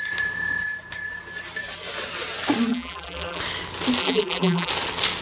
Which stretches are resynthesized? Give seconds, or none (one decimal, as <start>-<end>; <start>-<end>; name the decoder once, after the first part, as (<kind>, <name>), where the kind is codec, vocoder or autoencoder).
2.7-3.4 (vocoder, BigVGAN v2); 4.0-4.7

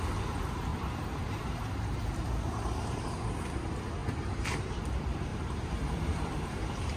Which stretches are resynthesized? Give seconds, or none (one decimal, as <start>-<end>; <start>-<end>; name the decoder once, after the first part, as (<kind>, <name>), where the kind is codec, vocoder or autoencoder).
0.7-3.1 (vocoder, BigVGAN v2); 4.0-4.8; 5.3-7.0

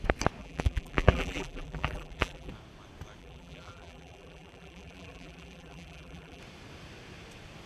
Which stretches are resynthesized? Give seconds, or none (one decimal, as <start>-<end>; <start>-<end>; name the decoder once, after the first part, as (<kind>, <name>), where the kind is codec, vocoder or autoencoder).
0.4-2.5 (vocoder, BigVGAN v2); 3.2-6.4

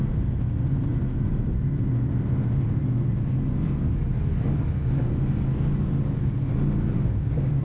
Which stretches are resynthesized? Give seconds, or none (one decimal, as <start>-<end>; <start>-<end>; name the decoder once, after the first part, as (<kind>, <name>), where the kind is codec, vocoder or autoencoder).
none

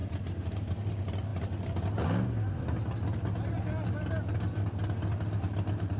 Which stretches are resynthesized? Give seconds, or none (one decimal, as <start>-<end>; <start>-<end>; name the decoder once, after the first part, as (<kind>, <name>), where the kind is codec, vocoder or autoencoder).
0.0-0.9 (vocoder, BigVGAN v2)

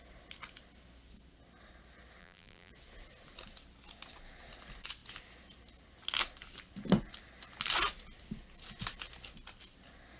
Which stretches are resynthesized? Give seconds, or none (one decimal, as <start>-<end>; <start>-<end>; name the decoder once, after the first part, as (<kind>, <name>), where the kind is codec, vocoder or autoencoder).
2.2-2.7 (vocoder, BigVGAN v2)

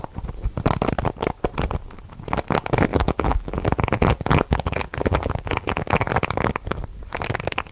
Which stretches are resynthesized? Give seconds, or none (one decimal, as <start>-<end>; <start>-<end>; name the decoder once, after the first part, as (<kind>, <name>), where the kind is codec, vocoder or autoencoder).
2.9-6.1 (vocoder, BigVGAN v2)